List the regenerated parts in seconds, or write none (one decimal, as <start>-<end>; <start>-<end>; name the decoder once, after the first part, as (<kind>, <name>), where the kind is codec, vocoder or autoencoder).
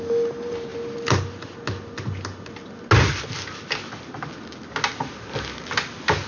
none